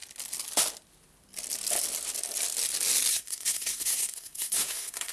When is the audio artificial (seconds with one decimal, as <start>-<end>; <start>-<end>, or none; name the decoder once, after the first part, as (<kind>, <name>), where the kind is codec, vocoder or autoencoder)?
3.1-5.1 (codec, SNAC)